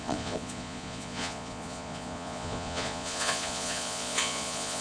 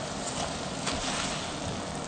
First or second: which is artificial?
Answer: first